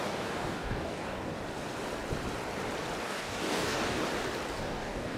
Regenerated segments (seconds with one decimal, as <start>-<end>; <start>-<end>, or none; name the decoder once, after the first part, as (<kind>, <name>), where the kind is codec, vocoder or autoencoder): 0.0-1.3 (codec, DAC); 3.0-4.0; 4.5-5.2